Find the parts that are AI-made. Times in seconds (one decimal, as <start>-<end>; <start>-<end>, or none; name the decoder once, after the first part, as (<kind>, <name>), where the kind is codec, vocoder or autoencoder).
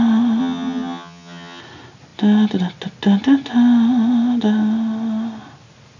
0.4-1.6 (vocoder, HiFi-GAN)